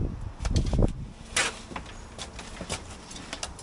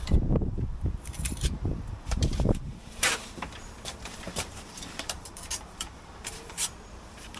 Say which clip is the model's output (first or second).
second